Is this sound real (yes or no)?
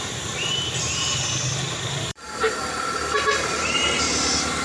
no